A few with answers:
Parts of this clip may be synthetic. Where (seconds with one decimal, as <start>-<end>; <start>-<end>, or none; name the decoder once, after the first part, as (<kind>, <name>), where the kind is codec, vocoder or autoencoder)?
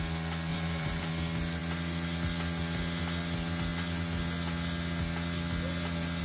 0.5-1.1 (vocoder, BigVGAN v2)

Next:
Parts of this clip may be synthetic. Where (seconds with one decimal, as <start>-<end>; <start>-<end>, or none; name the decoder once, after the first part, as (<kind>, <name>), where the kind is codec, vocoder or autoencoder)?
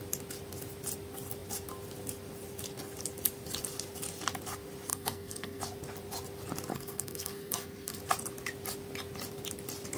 4.9-5.6 (codec, SNAC); 6.7-8.0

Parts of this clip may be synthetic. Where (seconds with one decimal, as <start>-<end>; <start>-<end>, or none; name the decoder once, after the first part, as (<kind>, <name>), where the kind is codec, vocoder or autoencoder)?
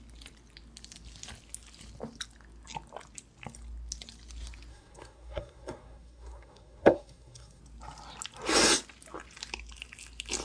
4.7-7.6 (codec, SNAC)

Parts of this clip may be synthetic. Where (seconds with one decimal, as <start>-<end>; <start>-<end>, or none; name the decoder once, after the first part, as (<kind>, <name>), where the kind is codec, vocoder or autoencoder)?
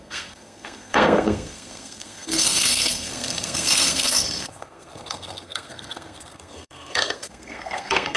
0.0-8.2 (codec, SNAC)